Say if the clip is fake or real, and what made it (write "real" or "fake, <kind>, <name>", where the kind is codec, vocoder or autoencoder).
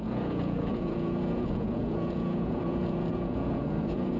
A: fake, vocoder, Vocos